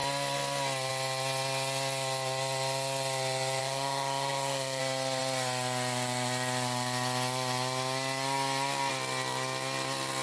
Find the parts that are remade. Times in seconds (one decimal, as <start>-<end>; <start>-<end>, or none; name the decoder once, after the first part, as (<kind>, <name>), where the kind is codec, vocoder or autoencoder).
3.6-4.8 (autoencoder, DAC-VAE)

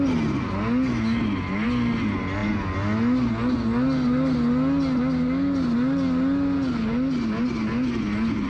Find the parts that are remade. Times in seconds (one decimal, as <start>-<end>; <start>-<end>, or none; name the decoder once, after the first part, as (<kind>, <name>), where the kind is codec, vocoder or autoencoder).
none

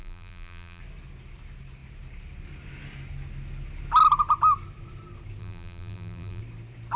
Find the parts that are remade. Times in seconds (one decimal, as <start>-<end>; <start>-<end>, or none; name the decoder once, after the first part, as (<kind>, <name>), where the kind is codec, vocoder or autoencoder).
0.0-0.8 (vocoder, BigVGAN v2); 5.4-6.4

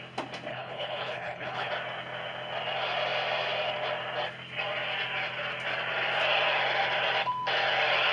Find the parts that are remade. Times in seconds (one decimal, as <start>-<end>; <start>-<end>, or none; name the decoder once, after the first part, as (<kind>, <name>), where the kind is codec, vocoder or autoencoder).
0.5-1.7 (codec, HILCodec)

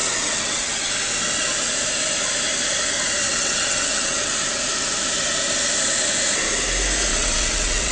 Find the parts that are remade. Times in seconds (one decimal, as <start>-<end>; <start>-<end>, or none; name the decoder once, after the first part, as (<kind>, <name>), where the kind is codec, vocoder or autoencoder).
0.0-0.9 (vocoder, WaveNeXt); 3.3-4.3; 7.1-7.9

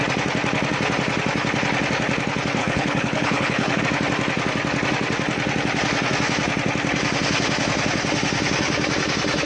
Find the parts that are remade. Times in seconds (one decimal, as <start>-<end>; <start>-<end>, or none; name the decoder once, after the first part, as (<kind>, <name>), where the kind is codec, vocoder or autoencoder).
2.6-3.8 (codec, HILCodec)

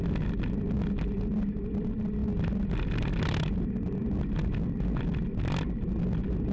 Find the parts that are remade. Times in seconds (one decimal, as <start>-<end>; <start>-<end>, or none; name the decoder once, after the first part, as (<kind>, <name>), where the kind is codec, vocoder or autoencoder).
none

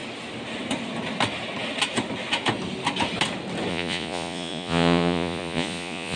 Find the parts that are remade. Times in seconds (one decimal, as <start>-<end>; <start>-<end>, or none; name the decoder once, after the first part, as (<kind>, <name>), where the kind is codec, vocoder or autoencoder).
3.7-6.2 (vocoder, Vocos)